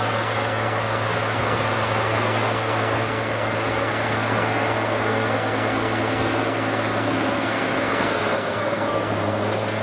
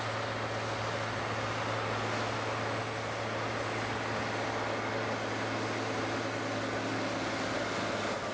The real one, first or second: second